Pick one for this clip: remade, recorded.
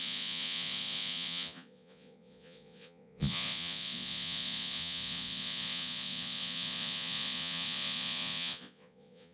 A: remade